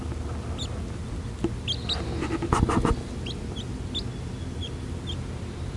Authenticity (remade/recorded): recorded